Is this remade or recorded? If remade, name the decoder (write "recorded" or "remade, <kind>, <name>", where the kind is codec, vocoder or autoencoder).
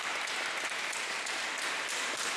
recorded